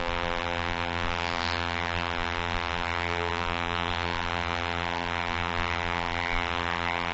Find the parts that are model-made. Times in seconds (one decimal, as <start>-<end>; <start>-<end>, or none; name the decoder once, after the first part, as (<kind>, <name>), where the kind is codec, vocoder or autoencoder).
0.0-7.1 (vocoder, BigVGAN v2)